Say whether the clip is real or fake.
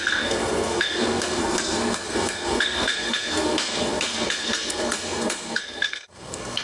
fake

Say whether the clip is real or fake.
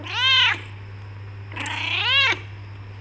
real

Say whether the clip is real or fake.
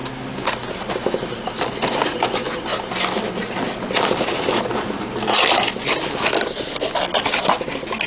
real